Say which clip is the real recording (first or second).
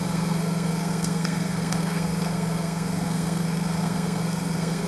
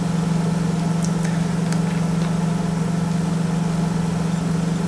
second